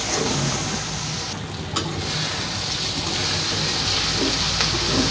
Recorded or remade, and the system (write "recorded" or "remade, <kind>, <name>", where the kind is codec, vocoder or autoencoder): recorded